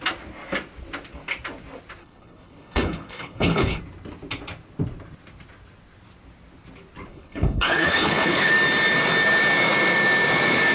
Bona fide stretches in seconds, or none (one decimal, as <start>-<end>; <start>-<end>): 0.0-2.0; 3.8-7.1; 8.5-10.7